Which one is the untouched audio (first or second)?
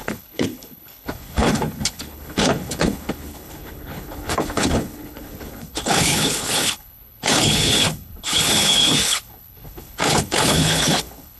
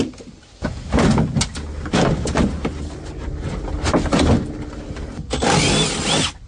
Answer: second